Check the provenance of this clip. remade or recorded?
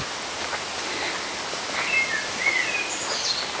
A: recorded